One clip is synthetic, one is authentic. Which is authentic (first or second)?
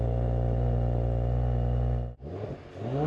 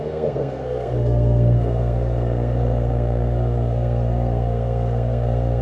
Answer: first